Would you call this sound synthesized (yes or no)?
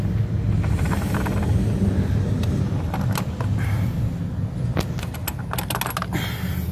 no